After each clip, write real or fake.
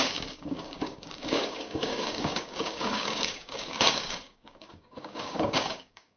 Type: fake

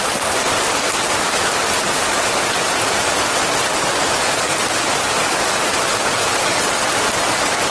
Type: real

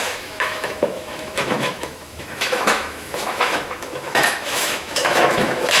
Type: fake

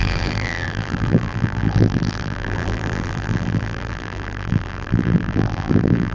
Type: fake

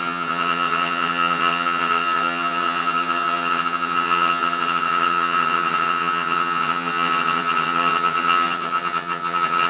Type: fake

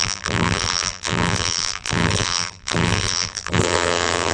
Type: fake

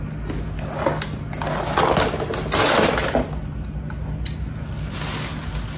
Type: real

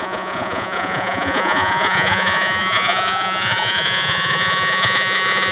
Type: fake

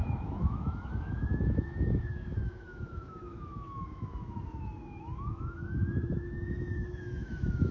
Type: fake